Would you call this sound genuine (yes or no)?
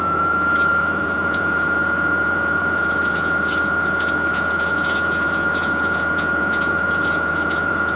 no